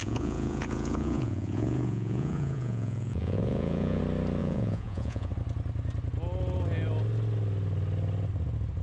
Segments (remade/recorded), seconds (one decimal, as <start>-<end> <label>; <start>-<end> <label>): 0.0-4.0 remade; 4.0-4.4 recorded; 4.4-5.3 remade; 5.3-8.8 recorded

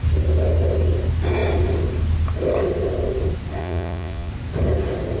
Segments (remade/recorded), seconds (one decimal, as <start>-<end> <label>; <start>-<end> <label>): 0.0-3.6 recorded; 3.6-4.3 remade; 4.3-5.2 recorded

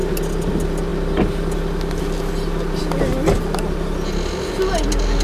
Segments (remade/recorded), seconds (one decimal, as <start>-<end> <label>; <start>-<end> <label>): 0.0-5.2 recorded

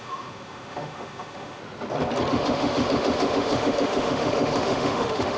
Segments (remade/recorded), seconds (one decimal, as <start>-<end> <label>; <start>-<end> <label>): 0.0-1.6 remade; 1.6-2.3 recorded; 2.3-5.4 remade

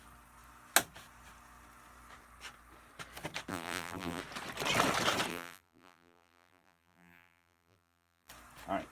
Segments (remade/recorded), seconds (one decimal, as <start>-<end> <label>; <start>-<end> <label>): 0.0-3.5 recorded; 3.5-4.2 remade; 4.2-5.3 recorded; 5.3-8.3 remade; 8.3-8.9 recorded

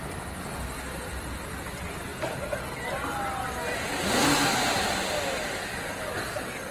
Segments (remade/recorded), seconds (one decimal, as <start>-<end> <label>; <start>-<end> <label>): 0.0-6.7 recorded

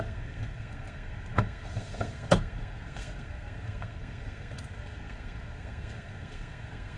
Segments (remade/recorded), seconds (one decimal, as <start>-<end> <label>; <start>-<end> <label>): 0.0-7.0 remade

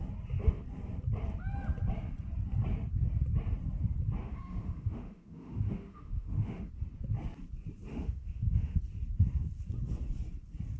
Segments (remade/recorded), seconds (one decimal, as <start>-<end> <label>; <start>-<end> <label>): 0.0-4.2 recorded; 4.2-6.7 remade; 6.7-7.9 recorded; 7.9-8.8 remade; 8.8-10.8 recorded